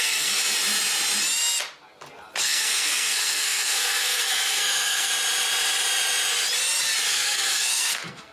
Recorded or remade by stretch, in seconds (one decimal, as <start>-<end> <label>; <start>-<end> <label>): 0.0-0.4 remade; 0.4-2.4 recorded; 2.4-5.1 remade; 5.1-7.1 recorded; 7.1-8.3 remade